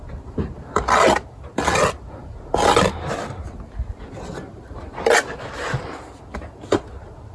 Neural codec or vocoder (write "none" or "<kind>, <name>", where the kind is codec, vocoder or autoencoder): none